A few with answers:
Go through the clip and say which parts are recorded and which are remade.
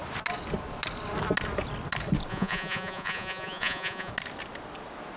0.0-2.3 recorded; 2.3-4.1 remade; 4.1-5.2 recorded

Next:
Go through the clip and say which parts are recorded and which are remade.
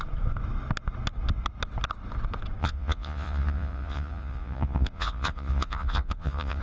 0.0-2.6 recorded; 2.6-6.6 remade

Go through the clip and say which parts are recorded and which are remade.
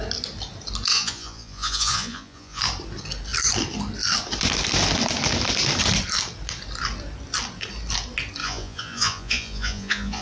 0.0-0.9 recorded; 0.9-2.6 remade; 2.6-8.4 recorded; 8.4-10.2 remade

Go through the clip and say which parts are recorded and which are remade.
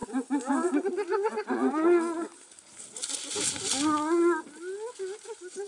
0.0-0.8 recorded; 0.8-1.8 remade; 1.8-5.2 recorded; 5.2-5.7 remade